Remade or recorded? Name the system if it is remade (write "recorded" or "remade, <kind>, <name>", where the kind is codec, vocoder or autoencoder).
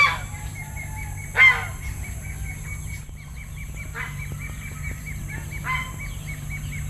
recorded